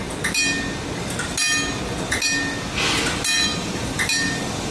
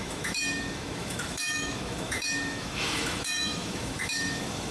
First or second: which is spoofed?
second